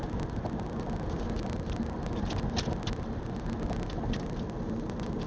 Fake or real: real